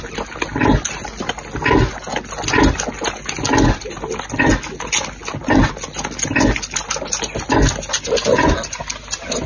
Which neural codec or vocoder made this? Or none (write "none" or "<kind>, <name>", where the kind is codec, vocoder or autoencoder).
none